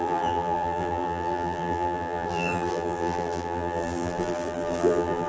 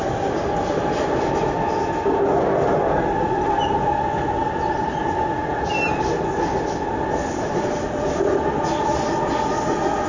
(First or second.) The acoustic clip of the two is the second